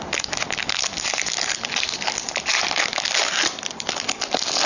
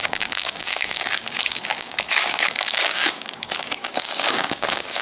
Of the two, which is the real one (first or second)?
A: first